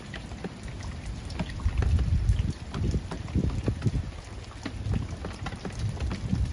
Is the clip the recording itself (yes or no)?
yes